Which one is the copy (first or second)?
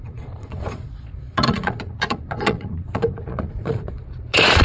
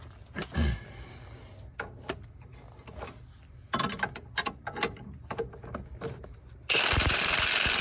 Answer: first